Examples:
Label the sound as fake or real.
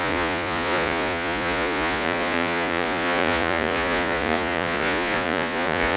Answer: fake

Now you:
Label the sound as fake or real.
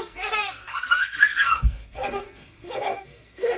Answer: fake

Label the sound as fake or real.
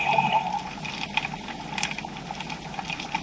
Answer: real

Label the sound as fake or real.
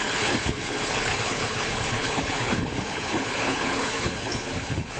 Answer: fake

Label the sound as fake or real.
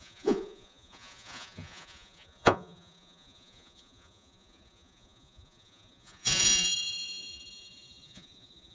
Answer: fake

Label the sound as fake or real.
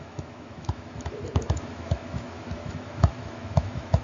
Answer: fake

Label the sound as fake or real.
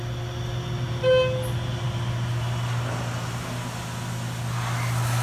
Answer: real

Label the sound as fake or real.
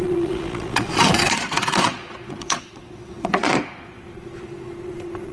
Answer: fake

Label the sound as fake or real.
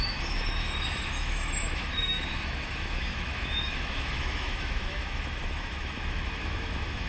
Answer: fake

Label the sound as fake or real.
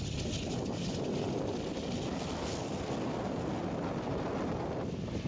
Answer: real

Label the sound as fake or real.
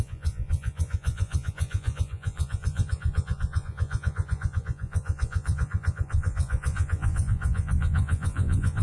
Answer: fake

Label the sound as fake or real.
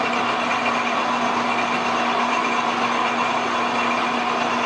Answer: real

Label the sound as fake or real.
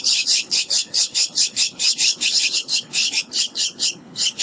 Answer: fake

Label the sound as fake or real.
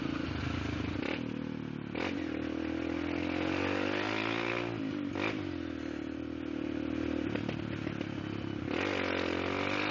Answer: real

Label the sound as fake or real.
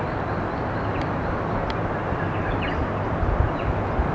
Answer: real